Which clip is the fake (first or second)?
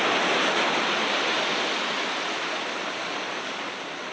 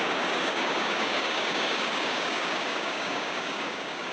second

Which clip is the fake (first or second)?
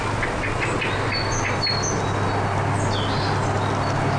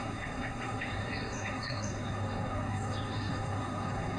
second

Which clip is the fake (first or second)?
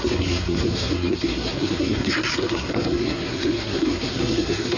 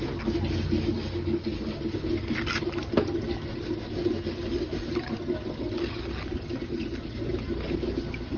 first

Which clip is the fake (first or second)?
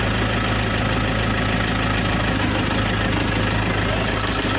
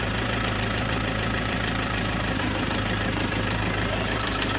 second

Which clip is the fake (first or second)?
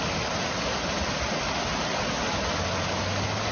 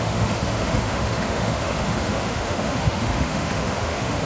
second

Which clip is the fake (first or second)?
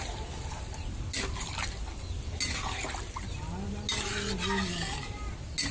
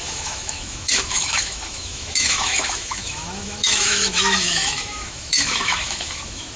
second